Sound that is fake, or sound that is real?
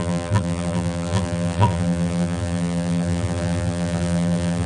fake